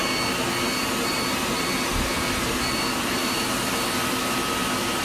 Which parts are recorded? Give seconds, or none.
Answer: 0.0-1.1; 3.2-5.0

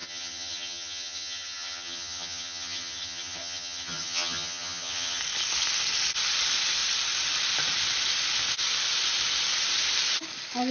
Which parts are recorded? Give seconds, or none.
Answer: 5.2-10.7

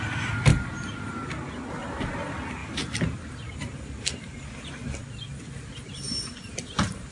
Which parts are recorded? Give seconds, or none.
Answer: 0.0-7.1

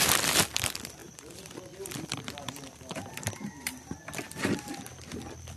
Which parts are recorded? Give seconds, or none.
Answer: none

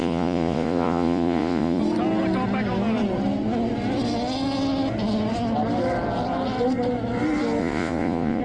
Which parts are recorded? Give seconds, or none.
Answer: 1.8-7.6